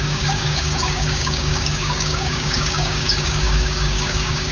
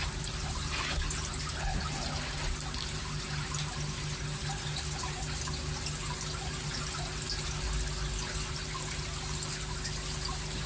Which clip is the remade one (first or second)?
first